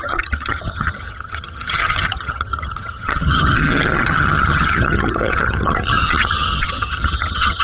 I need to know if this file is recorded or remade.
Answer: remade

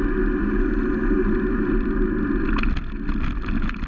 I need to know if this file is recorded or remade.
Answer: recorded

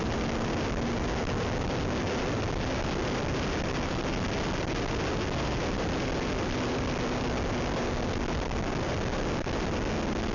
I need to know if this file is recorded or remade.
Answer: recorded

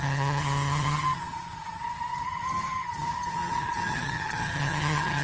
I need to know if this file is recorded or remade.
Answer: remade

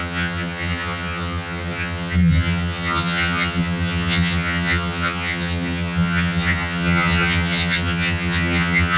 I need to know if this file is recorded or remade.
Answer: remade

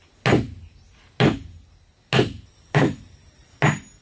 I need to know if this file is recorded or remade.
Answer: recorded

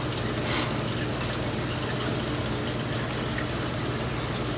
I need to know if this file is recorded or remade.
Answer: recorded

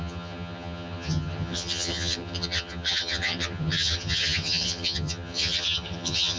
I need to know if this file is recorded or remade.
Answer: remade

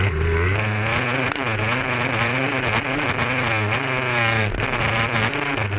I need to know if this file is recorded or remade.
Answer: recorded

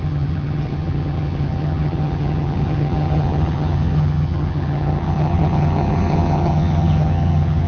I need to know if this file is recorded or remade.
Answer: remade